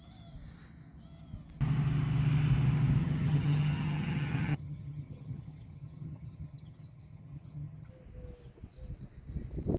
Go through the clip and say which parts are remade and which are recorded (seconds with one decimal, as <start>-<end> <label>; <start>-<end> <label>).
0.0-3.0 recorded; 3.0-7.9 remade; 7.9-9.8 recorded